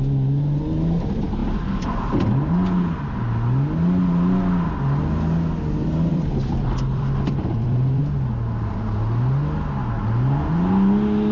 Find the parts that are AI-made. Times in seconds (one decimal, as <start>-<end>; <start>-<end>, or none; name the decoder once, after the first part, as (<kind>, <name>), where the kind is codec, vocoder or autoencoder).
6.1-8.0 (vocoder, BigVGAN v2)